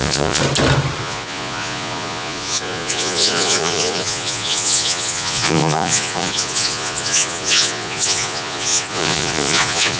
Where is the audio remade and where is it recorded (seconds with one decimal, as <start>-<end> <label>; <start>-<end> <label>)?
0.0-0.4 remade; 0.4-1.0 recorded; 1.0-10.0 remade